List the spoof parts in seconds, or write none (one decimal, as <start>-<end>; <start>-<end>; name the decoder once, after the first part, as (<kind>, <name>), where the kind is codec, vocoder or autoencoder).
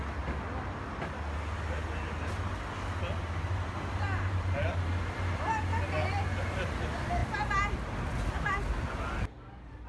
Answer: none